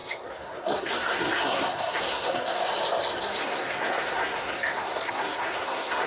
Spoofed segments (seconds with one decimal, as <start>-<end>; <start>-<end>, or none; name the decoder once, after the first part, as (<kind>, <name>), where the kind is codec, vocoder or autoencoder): 0.0-2.6 (codec, SNAC); 3.2-6.1